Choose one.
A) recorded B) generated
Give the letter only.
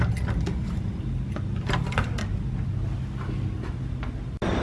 A